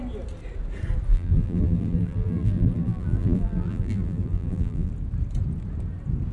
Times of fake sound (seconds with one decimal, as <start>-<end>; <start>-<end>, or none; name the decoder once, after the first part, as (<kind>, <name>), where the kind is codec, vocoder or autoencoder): 1.1-4.9 (vocoder, BigVGAN v2)